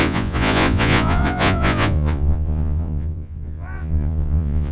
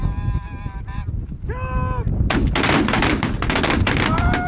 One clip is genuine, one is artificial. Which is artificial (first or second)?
first